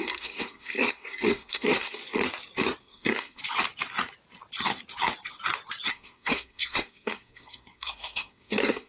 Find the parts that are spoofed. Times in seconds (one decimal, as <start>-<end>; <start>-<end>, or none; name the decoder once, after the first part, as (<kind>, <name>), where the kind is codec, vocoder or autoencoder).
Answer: 0.0-2.0 (codec, SNAC); 2.8-3.4; 5.9-8.9

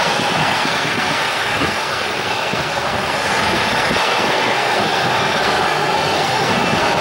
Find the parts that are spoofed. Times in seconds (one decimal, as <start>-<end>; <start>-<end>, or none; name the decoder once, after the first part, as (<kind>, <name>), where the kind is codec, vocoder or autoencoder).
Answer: 0.0-7.0 (codec, SNAC)

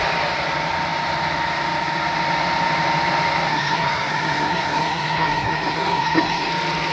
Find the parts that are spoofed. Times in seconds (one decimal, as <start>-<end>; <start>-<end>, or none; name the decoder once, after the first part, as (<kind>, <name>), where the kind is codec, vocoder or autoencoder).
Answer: 3.5-6.5 (codec, SNAC)

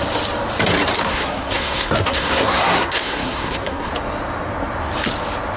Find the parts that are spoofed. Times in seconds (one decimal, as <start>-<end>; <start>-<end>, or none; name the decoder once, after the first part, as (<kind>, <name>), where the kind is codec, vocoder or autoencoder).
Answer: 1.0-3.9 (codec, SNAC)

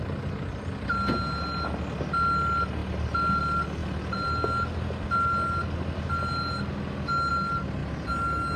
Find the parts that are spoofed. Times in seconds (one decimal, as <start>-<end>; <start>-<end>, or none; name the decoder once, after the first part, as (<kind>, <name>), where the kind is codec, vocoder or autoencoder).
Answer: none

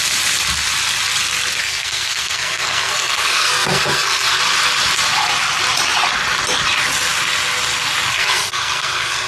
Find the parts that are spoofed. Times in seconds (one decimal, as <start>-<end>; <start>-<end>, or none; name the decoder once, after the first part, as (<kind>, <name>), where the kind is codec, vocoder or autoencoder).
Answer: 1.6-4.4 (codec, SNAC); 8.1-9.3

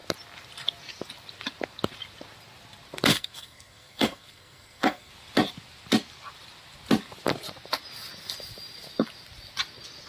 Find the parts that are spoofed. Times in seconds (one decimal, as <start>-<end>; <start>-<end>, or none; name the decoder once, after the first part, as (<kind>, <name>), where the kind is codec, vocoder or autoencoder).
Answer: 3.1-5.1 (codec, SNAC)

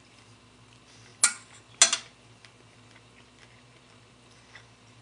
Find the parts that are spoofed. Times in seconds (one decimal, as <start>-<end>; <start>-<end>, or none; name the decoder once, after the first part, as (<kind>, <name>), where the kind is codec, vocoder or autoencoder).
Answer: none